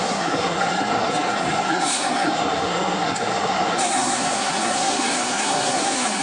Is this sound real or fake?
fake